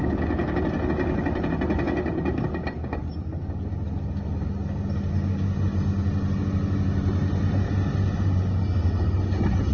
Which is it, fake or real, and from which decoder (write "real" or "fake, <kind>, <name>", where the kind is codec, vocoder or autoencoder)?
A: real